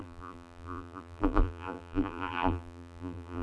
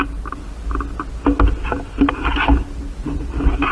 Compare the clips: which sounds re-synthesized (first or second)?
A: first